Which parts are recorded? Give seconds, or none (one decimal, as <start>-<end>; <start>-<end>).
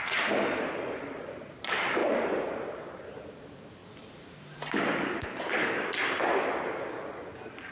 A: 0.0-2.0; 2.5-3.8; 5.5-7.7